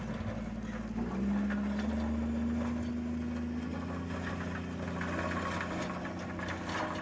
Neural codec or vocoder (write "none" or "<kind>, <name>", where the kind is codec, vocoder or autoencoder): none